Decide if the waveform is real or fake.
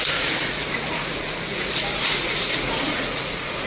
fake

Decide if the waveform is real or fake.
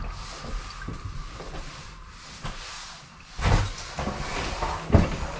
real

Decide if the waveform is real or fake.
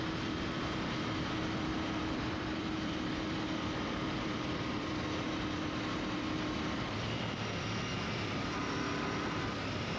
fake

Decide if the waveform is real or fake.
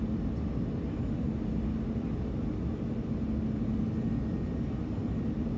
real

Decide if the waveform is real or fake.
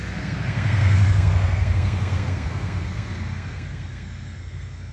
fake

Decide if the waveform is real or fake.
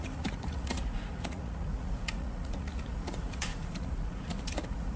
fake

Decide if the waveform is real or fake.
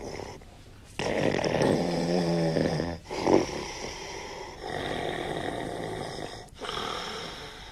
real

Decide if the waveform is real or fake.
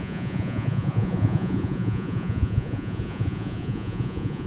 fake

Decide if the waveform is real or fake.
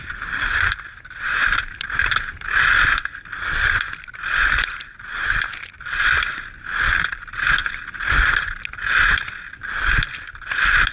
real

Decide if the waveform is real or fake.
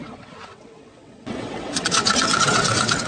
fake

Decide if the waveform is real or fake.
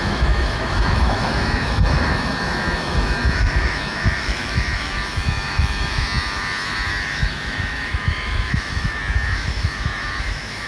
fake